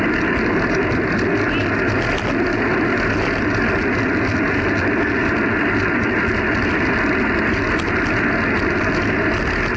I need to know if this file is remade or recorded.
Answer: recorded